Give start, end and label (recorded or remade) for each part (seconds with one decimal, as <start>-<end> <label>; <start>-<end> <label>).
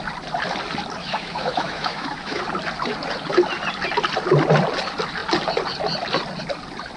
0.0-1.0 recorded; 1.0-2.4 remade; 2.4-7.0 recorded